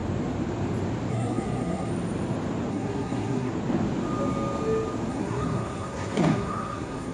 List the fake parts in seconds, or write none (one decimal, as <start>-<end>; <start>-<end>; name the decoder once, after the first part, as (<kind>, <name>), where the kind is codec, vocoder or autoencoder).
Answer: 1.1-1.9 (codec, SNAC); 2.7-3.5; 5.1-7.1